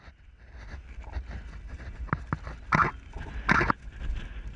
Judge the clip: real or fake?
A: real